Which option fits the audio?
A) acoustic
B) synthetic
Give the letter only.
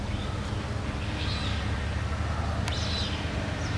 A